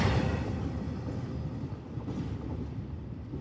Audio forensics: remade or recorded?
recorded